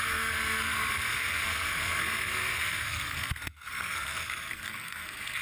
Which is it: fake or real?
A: fake